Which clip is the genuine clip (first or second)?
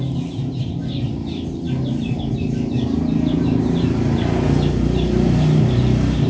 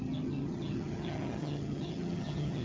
first